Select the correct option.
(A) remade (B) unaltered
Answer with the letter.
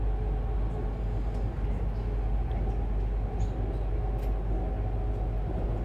B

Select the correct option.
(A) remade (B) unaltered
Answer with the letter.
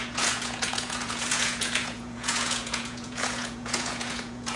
A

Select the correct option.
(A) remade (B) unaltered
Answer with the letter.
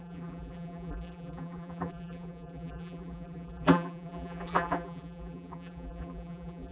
A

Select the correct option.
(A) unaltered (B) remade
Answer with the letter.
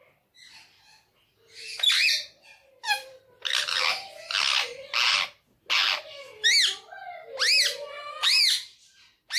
A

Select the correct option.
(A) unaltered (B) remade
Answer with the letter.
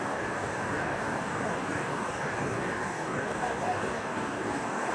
B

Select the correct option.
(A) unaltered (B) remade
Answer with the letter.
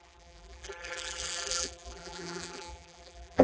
B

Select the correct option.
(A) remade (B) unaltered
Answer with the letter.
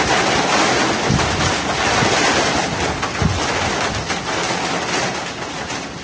B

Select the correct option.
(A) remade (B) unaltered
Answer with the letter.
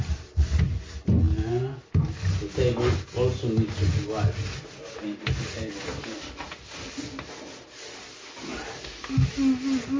B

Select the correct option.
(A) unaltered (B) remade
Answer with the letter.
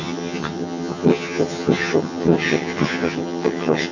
B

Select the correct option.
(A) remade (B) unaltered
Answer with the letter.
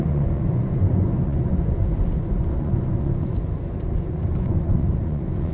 A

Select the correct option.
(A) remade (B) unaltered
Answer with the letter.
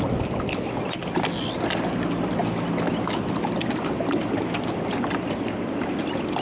B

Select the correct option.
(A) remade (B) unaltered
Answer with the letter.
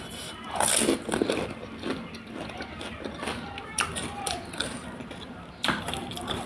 A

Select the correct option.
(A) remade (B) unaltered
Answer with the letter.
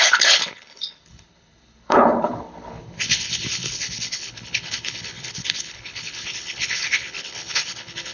A